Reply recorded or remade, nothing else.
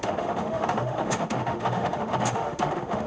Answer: remade